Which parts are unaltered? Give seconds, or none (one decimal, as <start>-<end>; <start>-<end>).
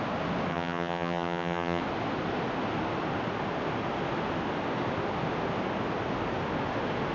0.0-0.5; 1.8-7.1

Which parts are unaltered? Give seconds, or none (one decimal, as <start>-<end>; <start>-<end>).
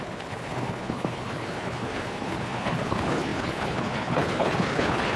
none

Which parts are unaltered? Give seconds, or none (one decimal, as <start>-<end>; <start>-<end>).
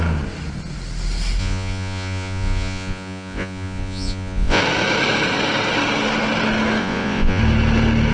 0.0-1.4; 4.6-6.8; 7.4-8.1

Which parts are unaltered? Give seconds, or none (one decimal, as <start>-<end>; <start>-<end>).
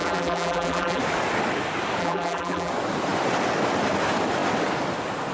1.0-2.0; 2.7-5.3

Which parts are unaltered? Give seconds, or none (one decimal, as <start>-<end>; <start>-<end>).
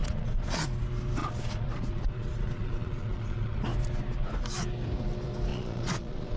0.6-1.2; 3.6-5.5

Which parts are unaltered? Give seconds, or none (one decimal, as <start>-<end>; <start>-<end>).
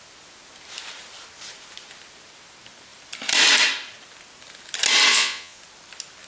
0.0-5.1; 5.6-6.3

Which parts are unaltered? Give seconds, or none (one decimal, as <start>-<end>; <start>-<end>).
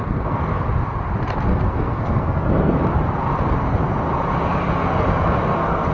0.7-1.5; 2.9-5.1